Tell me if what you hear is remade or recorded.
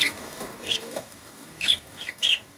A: remade